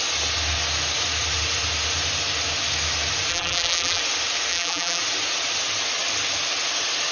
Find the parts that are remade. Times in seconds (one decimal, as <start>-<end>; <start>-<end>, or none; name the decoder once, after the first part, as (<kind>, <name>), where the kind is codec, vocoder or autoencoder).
3.3-4.0 (vocoder, BigVGAN v2); 4.5-5.0